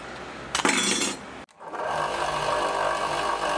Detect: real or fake real